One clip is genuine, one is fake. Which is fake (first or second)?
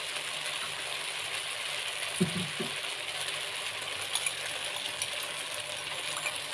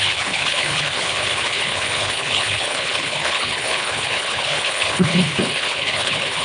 second